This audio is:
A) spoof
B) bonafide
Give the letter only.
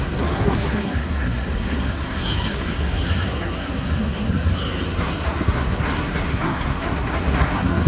A